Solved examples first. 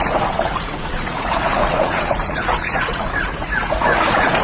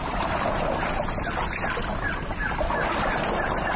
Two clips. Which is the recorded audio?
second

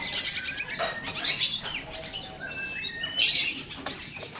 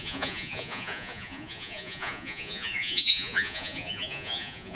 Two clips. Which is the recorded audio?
first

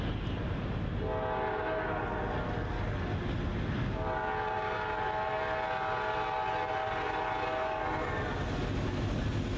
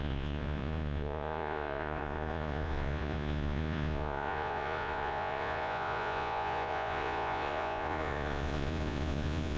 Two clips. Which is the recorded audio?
first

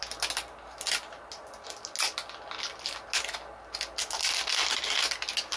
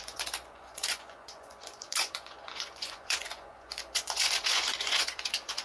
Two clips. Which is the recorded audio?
first